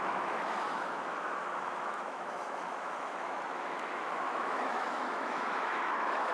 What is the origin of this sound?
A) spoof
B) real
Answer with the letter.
A